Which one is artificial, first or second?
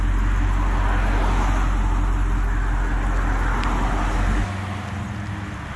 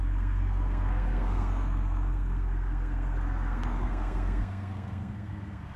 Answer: second